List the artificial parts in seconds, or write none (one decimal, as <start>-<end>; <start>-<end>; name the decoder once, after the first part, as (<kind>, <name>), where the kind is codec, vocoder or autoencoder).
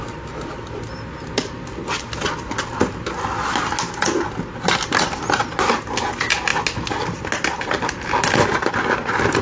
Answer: none